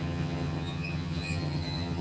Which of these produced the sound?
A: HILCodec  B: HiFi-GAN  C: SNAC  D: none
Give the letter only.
B